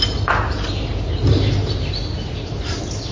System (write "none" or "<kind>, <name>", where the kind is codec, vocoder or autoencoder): none